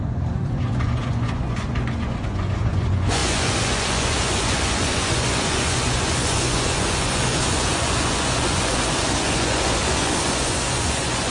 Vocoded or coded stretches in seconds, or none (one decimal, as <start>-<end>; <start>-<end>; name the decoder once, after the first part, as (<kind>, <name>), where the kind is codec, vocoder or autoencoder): 0.0-11.3 (vocoder, Vocos)